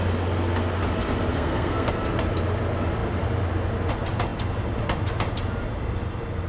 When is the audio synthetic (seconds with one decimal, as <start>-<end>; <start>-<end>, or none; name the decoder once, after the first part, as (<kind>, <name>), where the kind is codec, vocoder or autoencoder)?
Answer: 1.3-1.9 (codec, SNAC)